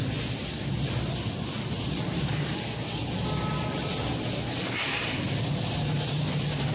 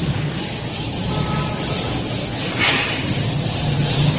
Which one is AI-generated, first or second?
second